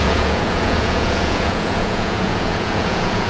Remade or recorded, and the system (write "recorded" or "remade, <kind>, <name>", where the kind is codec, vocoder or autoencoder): remade, vocoder, Vocos